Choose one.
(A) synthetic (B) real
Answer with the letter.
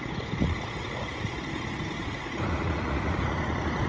A